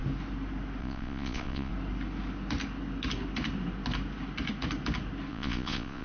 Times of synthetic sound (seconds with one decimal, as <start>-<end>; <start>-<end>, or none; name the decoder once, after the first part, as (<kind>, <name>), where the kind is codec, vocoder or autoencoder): 0.8-1.7 (vocoder, Vocos); 5.3-6.0